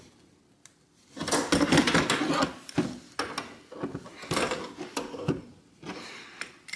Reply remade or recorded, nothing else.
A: recorded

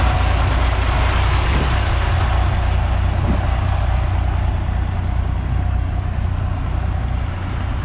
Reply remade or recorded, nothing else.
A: recorded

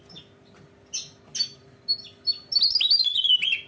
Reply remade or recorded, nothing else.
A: recorded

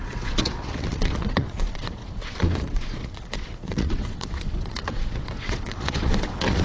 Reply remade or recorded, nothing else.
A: remade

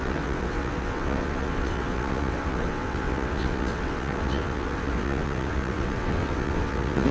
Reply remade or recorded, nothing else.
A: remade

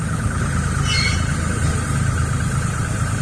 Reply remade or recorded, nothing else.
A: recorded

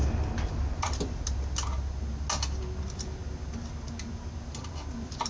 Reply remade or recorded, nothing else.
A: recorded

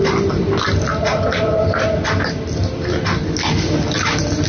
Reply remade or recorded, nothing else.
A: recorded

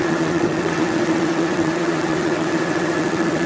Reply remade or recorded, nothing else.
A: remade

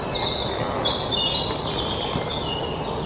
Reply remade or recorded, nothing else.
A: recorded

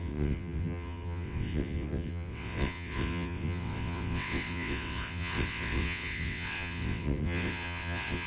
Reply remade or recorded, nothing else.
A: remade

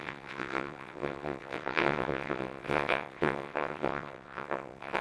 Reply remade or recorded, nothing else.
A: remade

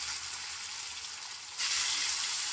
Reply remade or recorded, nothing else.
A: recorded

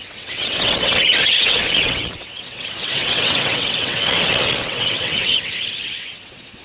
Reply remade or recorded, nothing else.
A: remade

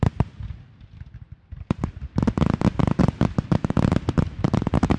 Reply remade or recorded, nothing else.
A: recorded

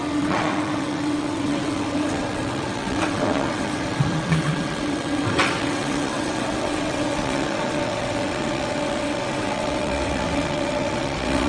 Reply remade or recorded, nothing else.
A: remade